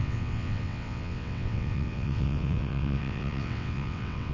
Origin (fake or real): fake